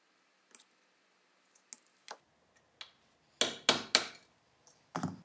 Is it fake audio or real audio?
real